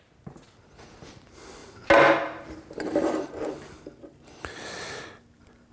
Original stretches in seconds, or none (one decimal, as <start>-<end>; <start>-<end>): 0.0-5.7